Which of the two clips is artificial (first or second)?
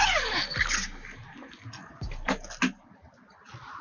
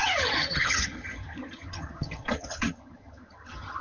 second